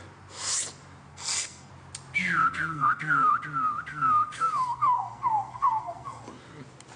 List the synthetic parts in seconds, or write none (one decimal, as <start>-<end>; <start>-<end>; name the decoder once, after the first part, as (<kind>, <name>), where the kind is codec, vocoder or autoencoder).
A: 1.1-1.7 (codec, SNAC); 2.4-3.3; 3.9-6.2